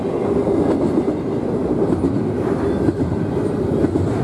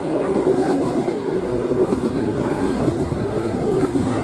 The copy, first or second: second